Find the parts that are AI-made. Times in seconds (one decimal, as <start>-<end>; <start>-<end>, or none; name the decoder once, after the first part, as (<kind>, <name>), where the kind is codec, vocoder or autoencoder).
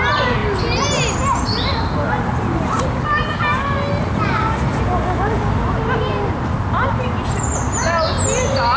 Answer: none